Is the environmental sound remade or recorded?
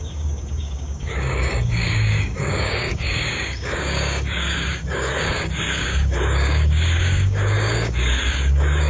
remade